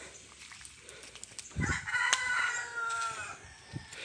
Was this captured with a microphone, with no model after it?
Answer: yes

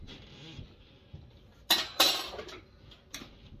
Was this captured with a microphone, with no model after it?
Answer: yes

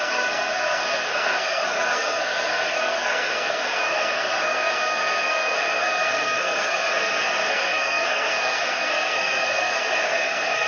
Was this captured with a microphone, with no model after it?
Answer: no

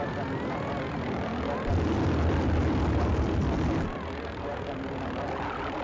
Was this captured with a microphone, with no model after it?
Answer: yes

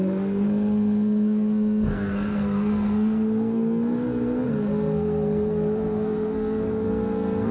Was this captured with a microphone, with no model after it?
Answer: no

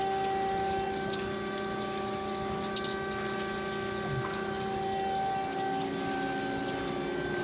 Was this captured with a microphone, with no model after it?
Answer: yes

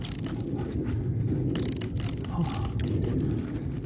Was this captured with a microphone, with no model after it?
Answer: yes